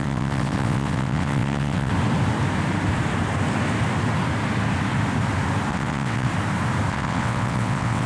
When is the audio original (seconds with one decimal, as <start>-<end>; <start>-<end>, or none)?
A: 1.9-5.7; 6.3-6.9